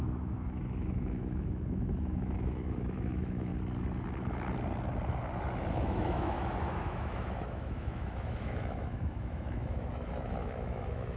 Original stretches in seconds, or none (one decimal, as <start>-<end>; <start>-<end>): 3.5-5.7